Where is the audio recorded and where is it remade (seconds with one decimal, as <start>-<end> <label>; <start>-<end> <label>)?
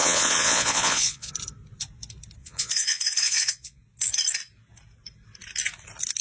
0.0-1.3 remade; 1.3-2.4 recorded; 2.4-3.8 remade; 3.8-6.2 recorded